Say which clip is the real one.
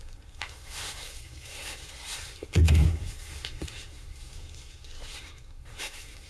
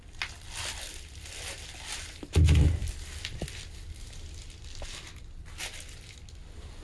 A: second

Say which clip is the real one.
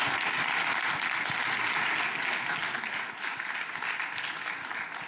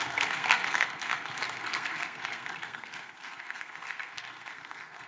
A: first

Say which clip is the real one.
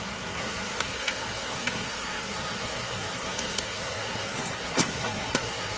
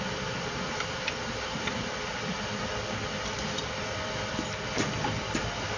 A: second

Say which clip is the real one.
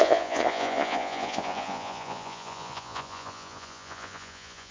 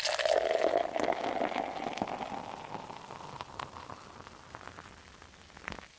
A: second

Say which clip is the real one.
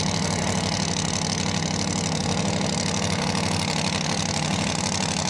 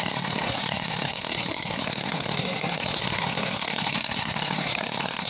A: first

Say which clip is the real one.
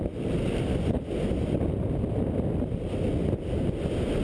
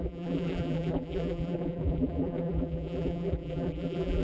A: first